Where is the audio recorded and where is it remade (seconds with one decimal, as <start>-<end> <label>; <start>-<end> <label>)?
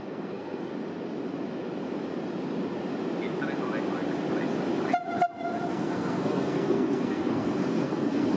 0.0-0.7 remade; 0.7-5.7 recorded; 5.7-8.4 remade